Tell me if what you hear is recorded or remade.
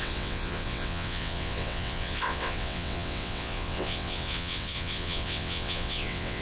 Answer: remade